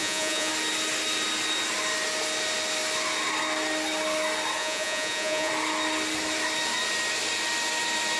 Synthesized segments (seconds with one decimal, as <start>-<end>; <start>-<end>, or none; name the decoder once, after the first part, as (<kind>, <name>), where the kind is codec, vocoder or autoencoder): 0.0-0.5 (vocoder, Vocos); 4.6-5.5